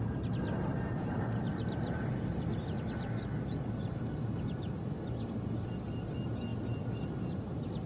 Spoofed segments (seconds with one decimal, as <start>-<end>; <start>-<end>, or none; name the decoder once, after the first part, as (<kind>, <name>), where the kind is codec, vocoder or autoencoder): none